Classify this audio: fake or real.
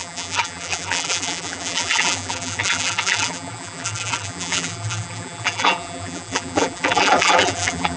fake